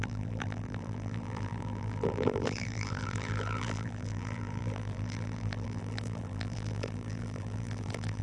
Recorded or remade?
remade